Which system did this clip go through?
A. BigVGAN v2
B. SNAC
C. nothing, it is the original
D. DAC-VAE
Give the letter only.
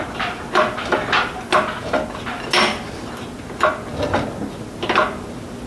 C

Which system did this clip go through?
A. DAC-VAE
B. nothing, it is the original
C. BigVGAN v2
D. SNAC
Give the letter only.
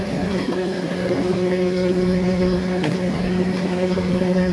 D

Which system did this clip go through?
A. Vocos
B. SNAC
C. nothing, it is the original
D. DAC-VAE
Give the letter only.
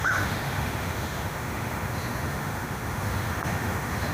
D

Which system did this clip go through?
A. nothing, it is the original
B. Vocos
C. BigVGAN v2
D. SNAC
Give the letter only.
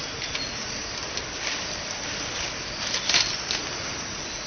A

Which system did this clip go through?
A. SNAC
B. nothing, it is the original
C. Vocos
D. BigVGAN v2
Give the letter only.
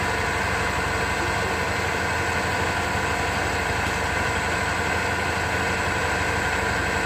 B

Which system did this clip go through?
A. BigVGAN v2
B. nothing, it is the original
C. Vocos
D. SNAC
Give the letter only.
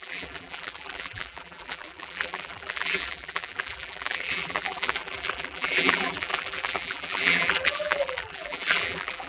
A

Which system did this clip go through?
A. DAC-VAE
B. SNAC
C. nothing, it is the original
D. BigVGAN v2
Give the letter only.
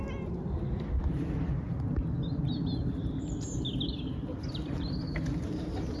C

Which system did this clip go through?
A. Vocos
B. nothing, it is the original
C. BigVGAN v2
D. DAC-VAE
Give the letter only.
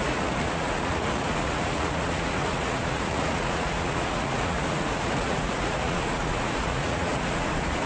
A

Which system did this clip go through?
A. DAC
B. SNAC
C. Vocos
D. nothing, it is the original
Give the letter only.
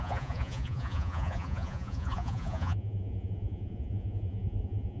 C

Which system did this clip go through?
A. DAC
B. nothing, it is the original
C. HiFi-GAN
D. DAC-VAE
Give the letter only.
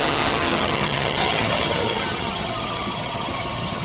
C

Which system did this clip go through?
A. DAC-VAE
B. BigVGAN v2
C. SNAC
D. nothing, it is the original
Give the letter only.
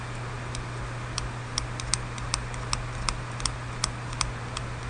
D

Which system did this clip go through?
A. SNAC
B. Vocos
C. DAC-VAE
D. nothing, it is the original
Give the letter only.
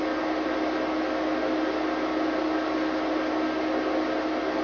D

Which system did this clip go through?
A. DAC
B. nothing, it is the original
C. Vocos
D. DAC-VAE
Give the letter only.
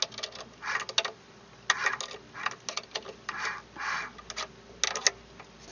B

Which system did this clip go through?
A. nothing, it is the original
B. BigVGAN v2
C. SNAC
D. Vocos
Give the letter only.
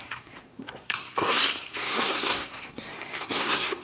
C